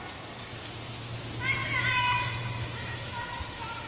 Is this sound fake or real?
real